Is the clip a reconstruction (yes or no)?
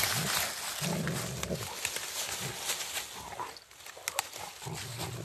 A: no